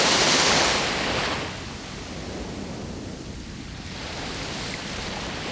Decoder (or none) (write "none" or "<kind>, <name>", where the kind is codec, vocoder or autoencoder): none